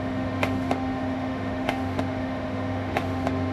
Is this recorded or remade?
remade